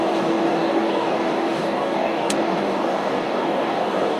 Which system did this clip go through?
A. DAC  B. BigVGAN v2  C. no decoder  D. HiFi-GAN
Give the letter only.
A